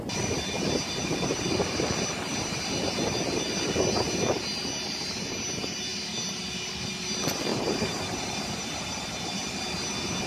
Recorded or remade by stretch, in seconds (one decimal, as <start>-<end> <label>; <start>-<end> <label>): 0.0-7.5 recorded; 7.5-9.1 remade; 9.1-10.3 recorded